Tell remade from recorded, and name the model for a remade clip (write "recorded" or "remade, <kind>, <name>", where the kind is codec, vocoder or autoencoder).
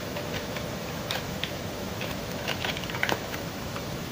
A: remade, autoencoder, DAC-VAE